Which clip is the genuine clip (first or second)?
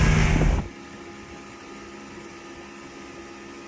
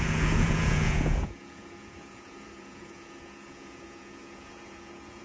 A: first